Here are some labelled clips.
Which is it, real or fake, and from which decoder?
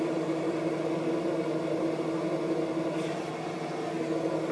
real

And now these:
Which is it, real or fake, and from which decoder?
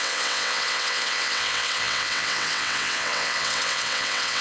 fake, vocoder, WaveNeXt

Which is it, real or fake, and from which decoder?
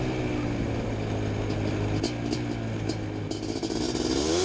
real